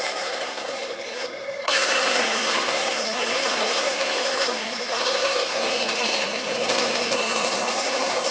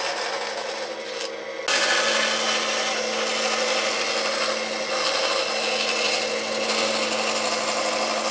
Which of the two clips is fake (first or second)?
first